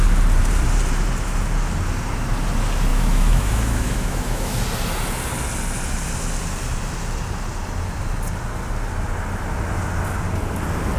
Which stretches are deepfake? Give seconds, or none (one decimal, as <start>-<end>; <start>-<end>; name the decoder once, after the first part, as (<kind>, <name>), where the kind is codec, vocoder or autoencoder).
2.9-4.6 (autoencoder, DAC-VAE)